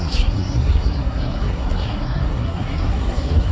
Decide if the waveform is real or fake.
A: fake